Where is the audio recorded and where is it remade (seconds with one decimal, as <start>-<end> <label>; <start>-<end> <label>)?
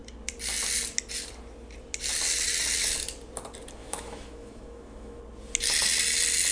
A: 0.0-3.8 recorded; 3.8-5.2 remade; 5.2-6.5 recorded